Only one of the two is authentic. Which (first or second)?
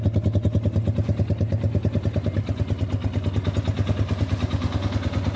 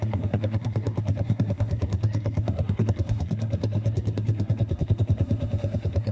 first